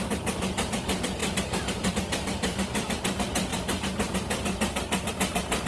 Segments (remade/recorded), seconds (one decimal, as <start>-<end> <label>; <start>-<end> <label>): 0.0-1.2 recorded; 1.2-1.9 remade; 1.9-2.5 recorded; 2.5-3.0 remade; 3.0-5.7 recorded